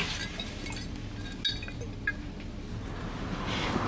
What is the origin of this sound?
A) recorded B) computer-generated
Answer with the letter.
A